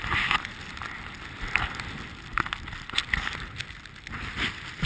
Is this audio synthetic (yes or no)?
no